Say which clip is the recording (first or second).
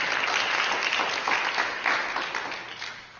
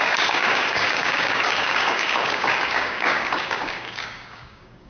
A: first